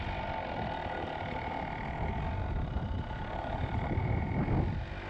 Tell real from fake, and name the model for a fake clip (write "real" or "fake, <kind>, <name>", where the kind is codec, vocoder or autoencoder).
real